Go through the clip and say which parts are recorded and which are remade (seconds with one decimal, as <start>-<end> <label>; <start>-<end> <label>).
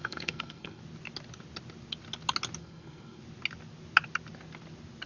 0.0-0.8 remade; 0.8-2.6 recorded; 2.6-3.2 remade; 3.2-5.1 recorded